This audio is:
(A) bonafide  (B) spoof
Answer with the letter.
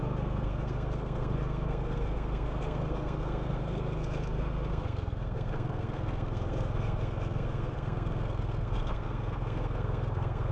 B